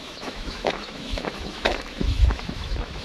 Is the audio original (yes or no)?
no